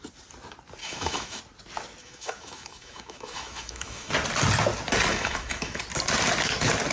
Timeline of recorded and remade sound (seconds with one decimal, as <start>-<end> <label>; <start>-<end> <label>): 0.0-0.8 recorded; 0.8-1.4 remade; 1.4-2.0 recorded; 2.0-4.1 remade; 4.1-5.1 recorded; 5.1-5.8 remade; 5.8-6.9 recorded